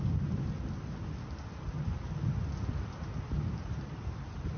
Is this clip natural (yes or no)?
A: yes